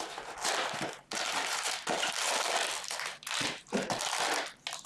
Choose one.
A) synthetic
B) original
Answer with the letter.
B